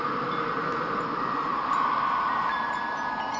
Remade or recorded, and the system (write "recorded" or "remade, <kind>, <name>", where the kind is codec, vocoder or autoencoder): recorded